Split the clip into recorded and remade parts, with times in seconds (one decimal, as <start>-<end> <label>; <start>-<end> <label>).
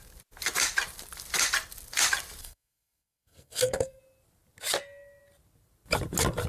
0.0-2.4 recorded; 2.4-4.0 remade; 4.0-6.5 recorded